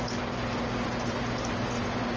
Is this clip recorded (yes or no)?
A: yes